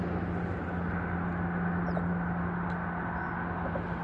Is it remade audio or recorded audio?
recorded